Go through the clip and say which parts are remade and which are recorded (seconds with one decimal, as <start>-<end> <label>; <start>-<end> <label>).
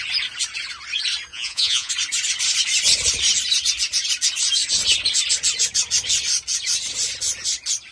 0.0-1.3 recorded; 1.3-1.9 remade; 1.9-7.9 recorded